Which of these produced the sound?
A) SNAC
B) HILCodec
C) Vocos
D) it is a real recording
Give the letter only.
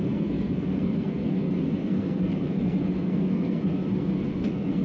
A